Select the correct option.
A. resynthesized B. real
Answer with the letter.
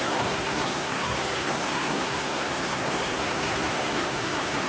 A